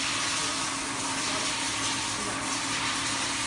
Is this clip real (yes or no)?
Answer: yes